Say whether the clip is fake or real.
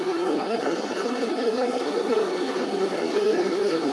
fake